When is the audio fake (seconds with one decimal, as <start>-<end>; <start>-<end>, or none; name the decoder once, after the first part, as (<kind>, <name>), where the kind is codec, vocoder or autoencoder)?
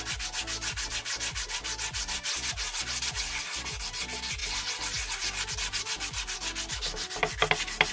none